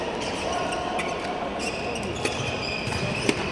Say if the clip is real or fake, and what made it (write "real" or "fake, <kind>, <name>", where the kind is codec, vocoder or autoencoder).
fake, vocoder, BigVGAN v2